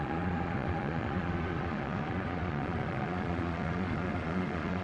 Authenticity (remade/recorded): remade